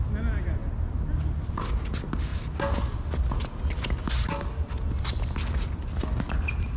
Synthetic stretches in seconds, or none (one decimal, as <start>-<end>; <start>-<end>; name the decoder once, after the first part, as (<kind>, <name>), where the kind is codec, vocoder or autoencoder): none